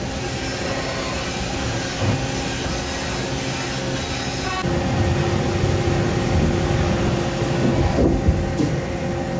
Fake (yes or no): no